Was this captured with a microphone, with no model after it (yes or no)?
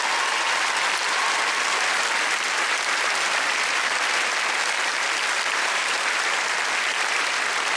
yes